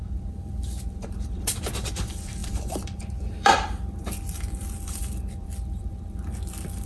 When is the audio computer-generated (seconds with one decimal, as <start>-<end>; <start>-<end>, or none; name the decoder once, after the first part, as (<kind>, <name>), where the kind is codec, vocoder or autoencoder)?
0.0-6.9 (vocoder, BigVGAN v2)